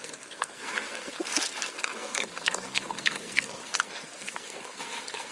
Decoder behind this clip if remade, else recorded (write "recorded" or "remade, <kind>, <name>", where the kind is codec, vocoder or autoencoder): remade, codec, SNAC